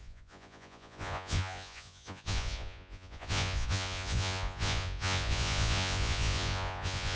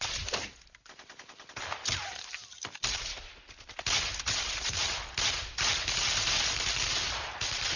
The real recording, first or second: second